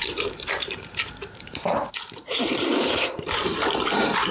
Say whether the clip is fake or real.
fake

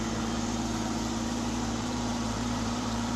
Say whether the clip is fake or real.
fake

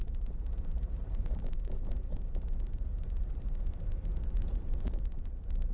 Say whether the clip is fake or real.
real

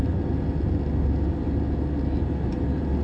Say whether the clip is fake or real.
real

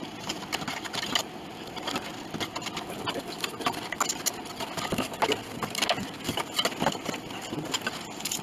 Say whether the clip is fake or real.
real